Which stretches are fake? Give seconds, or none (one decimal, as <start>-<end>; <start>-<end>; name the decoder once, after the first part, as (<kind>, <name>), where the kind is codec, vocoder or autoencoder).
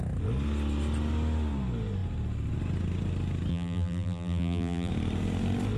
3.5-4.9 (vocoder, BigVGAN v2)